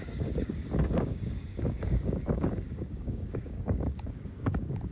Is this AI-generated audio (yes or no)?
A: yes